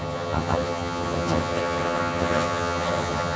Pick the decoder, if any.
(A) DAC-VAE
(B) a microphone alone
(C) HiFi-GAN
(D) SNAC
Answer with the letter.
C